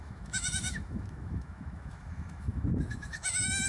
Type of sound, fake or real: fake